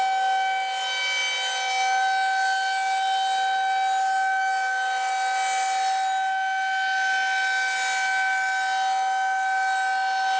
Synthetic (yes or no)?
no